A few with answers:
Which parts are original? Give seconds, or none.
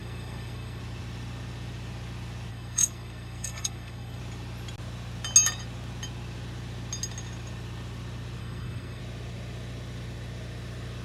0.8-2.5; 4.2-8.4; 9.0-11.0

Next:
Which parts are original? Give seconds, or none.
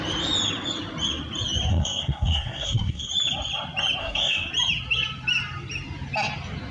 0.0-1.7; 3.1-4.0; 4.5-6.7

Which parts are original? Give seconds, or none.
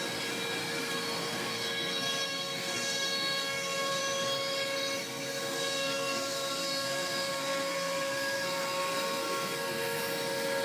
0.0-0.6; 4.0-5.0; 10.0-10.6